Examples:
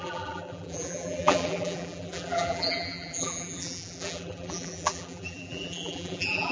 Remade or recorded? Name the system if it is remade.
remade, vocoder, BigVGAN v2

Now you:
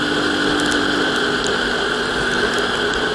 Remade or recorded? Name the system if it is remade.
recorded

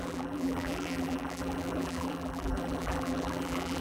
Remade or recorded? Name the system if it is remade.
remade, vocoder, BigVGAN v2